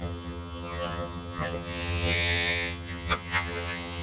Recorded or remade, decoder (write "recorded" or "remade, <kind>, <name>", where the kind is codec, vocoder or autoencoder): remade, vocoder, HiFi-GAN